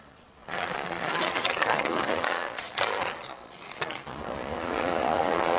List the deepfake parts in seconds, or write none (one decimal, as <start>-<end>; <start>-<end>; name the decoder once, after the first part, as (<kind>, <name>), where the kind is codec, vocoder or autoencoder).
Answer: 0.0-5.6 (vocoder, Vocos)